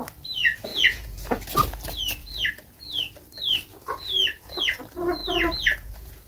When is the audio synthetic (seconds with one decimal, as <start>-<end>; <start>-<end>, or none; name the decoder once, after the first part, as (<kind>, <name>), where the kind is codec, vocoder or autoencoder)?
0.7-1.4 (vocoder, Vocos); 2.2-2.8; 3.7-4.6; 5.2-6.3